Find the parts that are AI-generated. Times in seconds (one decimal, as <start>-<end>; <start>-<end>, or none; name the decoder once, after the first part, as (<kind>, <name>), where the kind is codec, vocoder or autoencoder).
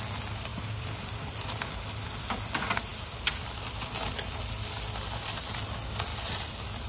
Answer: 0.5-1.8 (vocoder, BigVGAN v2); 2.9-4.4; 6.1-6.9